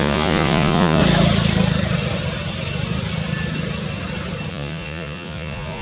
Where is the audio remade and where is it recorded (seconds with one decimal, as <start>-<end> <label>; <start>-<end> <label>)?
0.0-1.0 remade; 1.0-4.5 recorded; 4.5-5.8 remade